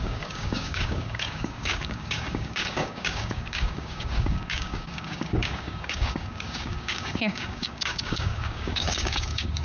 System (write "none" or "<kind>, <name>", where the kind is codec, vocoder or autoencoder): codec, DAC